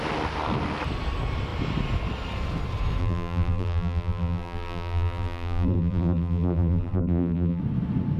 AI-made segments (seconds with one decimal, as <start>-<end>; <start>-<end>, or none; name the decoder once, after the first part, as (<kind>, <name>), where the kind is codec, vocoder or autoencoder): 3.0-7.6 (vocoder, BigVGAN v2)